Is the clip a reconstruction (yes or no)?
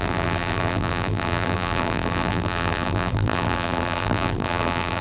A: yes